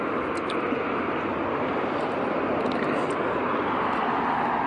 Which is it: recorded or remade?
recorded